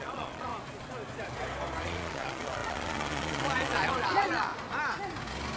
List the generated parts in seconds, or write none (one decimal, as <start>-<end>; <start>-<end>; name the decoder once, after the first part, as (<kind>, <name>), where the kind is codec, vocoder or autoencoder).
0.0-0.5 (vocoder, Vocos); 1.8-4.5